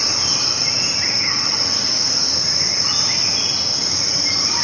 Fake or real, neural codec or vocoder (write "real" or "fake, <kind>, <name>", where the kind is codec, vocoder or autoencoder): real